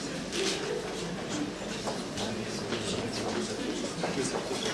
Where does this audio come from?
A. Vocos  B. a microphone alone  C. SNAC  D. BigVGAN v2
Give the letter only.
B